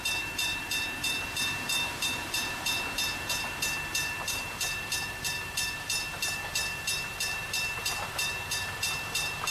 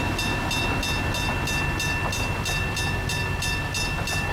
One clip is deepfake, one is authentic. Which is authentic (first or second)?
second